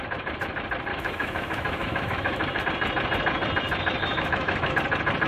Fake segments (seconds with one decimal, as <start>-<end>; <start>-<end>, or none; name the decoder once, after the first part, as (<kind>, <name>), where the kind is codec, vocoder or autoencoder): 0.9-2.6 (autoencoder, DAC-VAE); 4.0-4.7